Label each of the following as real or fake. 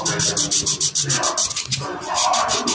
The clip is real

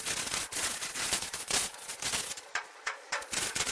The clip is fake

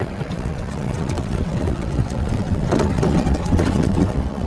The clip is fake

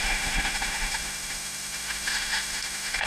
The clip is fake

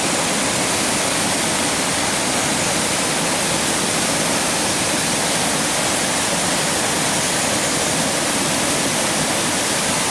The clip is real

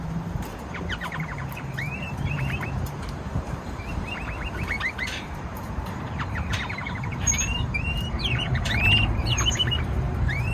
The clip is fake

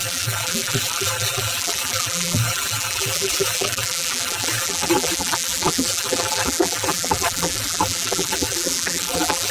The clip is fake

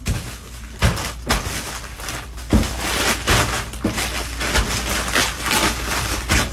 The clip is real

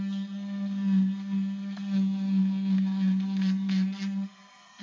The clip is fake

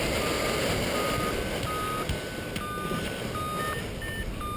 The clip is real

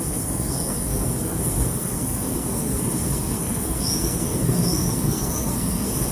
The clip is fake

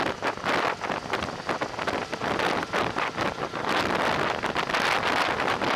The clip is real